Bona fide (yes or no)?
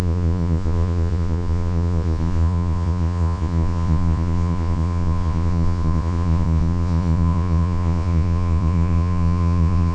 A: no